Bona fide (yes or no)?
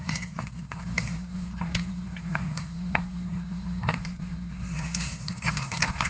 no